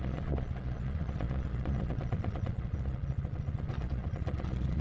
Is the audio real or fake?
fake